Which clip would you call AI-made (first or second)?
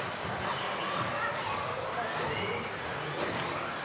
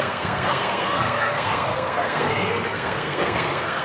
second